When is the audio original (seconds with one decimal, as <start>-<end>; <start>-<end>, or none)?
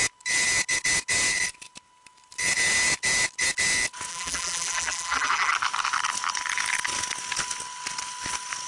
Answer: 0.0-4.1; 5.5-8.7